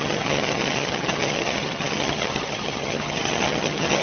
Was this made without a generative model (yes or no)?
no